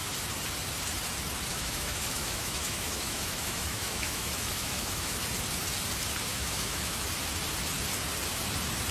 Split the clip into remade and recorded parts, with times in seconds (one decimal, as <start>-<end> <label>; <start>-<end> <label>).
0.0-1.5 recorded; 1.5-5.2 remade; 5.2-6.3 recorded; 6.3-7.1 remade; 7.1-8.9 recorded